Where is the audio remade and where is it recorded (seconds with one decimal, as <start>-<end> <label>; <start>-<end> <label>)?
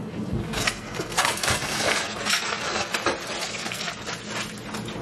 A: 0.0-2.9 remade; 2.9-3.4 recorded; 3.4-3.9 remade; 3.9-5.0 recorded